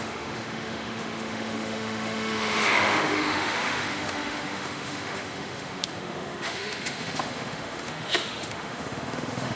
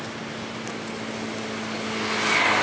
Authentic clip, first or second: second